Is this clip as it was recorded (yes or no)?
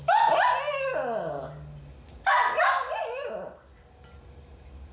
yes